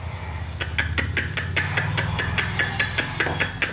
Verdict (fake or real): real